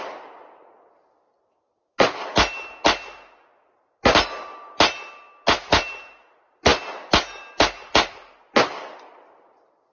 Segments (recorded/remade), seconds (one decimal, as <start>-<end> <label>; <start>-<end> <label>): 0.0-9.9 recorded